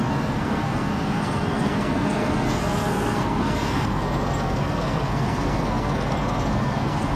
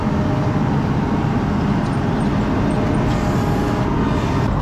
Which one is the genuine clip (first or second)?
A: second